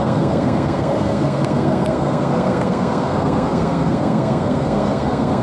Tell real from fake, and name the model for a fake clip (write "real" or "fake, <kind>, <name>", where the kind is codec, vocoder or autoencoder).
fake, codec, SNAC